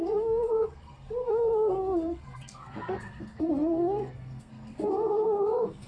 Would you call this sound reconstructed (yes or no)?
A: yes